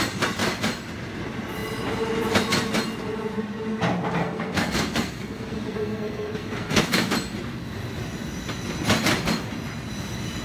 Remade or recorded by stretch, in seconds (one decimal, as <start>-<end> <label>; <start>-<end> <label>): 0.0-4.2 recorded; 4.2-7.1 remade; 7.1-10.4 recorded